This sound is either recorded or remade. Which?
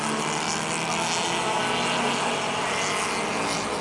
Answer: recorded